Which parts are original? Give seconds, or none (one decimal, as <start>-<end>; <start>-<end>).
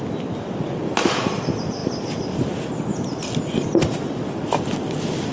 0.0-5.3